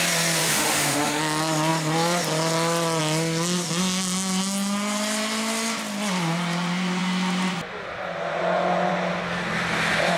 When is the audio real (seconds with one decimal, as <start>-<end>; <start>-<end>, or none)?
0.0-0.4; 1.2-10.2